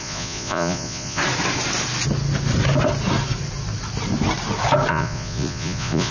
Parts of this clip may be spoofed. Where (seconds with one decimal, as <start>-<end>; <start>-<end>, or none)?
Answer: 0.0-1.2; 4.9-6.1